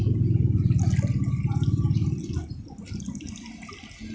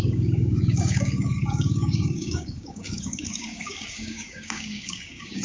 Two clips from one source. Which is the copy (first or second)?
second